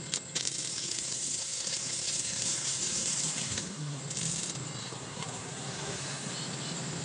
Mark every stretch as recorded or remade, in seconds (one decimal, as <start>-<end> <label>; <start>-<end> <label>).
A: 0.0-0.7 recorded; 0.7-4.0 remade; 4.0-4.8 recorded; 4.8-6.3 remade; 6.3-7.0 recorded